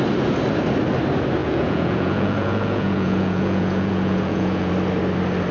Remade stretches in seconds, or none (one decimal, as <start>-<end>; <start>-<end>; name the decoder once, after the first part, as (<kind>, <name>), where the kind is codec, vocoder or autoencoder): 1.4-4.7 (vocoder, Vocos)